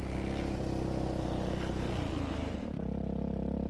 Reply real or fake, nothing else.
real